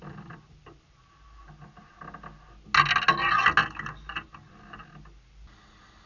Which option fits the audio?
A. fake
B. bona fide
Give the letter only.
B